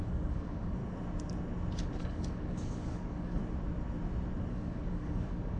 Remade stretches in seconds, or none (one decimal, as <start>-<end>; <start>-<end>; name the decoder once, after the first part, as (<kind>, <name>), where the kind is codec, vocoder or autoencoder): 0.0-0.8 (codec, DAC); 2.0-3.4; 4.5-5.6